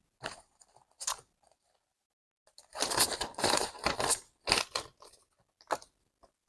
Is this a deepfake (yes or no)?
no